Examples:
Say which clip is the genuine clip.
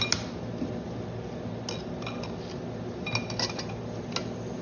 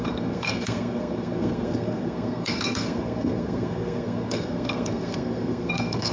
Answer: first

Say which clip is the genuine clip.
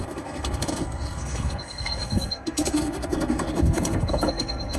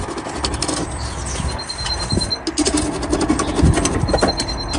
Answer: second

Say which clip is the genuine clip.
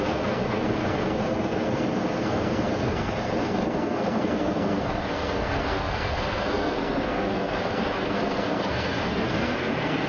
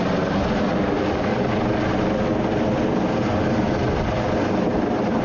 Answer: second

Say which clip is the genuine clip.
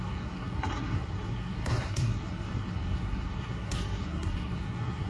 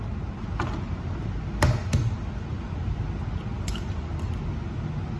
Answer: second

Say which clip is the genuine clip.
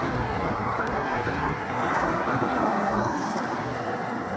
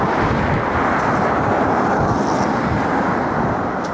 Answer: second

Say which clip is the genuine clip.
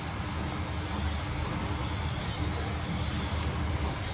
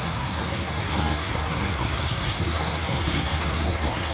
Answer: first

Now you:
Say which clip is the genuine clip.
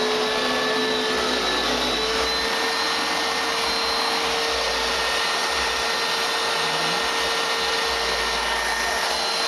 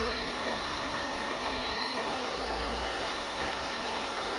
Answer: first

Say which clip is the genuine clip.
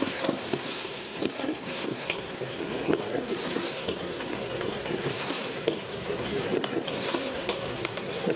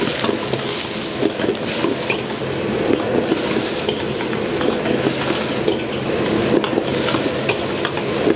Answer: second